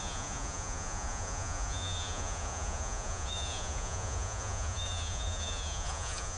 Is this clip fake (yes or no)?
yes